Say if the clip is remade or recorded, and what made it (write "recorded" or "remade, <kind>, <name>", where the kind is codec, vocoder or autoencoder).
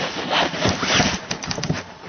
remade, vocoder, BigVGAN v2